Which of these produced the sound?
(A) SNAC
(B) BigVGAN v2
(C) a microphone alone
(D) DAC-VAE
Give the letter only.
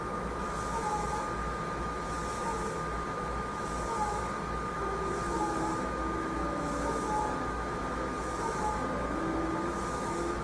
D